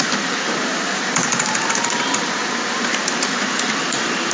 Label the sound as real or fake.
fake